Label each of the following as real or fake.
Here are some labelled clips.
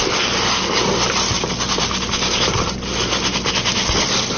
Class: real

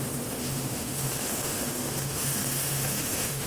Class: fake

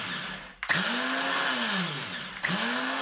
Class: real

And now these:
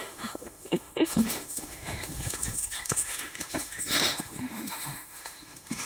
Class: fake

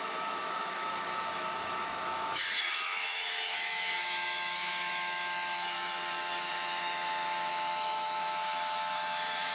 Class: fake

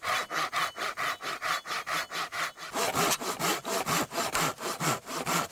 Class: real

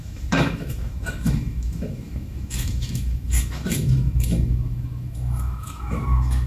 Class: fake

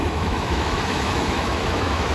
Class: fake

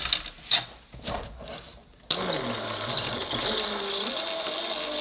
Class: real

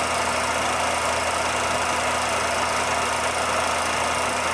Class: real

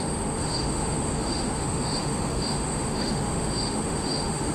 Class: fake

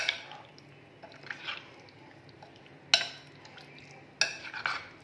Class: real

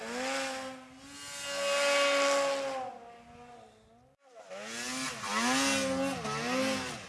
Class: real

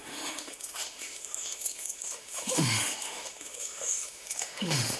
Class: fake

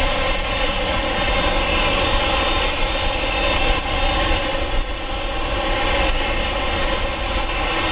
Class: real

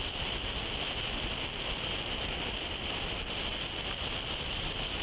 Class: real